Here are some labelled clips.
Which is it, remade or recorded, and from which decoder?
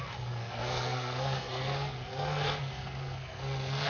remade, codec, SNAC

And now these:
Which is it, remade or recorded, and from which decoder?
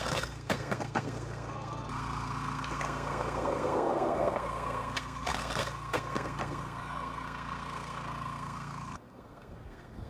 remade, codec, SNAC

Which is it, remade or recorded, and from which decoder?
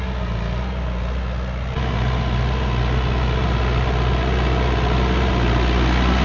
recorded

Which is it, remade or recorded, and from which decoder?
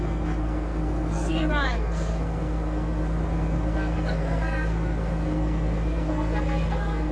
remade, codec, SNAC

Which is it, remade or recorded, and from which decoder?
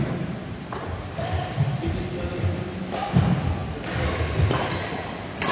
recorded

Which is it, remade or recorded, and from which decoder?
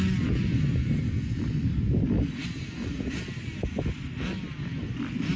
recorded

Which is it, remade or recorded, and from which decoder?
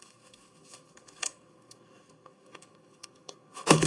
remade, codec, SNAC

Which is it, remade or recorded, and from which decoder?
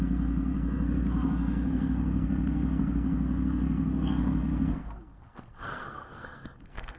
remade, codec, SNAC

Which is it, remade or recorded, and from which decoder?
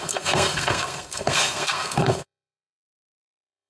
remade, codec, SNAC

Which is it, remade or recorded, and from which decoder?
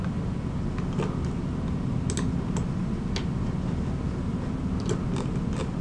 recorded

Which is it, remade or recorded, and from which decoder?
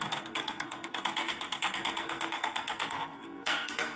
remade, codec, SNAC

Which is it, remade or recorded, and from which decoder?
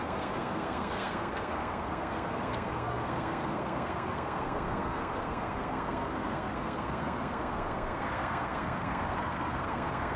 remade, codec, SNAC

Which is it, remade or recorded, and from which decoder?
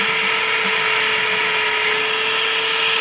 recorded